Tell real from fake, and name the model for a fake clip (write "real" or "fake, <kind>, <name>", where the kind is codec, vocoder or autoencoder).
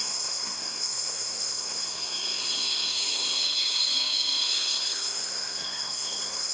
fake, codec, SNAC